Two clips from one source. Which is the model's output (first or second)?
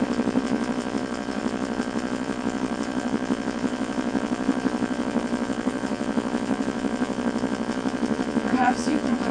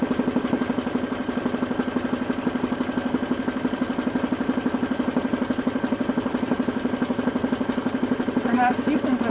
first